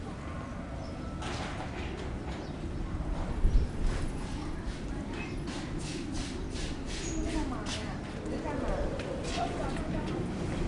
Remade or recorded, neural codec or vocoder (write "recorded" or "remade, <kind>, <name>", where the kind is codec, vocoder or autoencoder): recorded